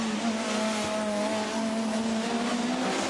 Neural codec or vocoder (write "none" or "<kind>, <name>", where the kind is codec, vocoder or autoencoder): none